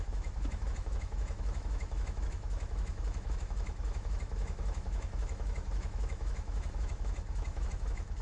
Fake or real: fake